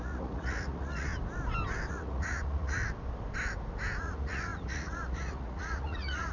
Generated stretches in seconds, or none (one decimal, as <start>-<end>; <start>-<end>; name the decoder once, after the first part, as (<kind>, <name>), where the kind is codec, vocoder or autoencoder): 0.0-1.1 (vocoder, Vocos); 1.9-2.8; 4.0-6.3

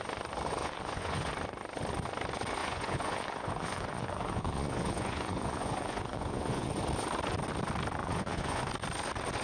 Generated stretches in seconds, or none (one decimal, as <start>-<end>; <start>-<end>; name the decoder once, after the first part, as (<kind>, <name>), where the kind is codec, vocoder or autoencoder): 0.6-1.3 (vocoder, Vocos); 2.6-6.7; 8.0-8.7

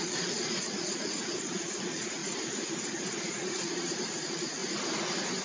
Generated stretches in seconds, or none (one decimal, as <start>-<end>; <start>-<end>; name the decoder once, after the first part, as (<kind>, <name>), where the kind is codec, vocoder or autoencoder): 0.0-2.2 (vocoder, Vocos); 3.2-4.6

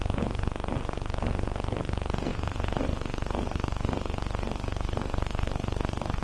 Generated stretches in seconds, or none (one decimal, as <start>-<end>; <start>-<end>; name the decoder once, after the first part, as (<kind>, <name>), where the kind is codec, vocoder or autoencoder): 0.0-6.2 (codec, SNAC)

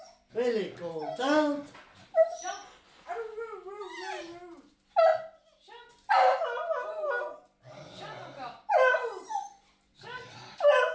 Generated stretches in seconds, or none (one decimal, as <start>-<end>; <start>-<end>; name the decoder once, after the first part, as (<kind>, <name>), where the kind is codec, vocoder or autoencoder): none

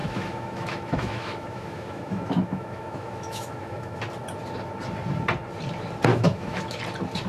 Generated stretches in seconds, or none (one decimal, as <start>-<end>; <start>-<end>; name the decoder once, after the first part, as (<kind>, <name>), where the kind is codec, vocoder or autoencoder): 0.0-4.0 (autoencoder, DAC-VAE); 6.1-6.8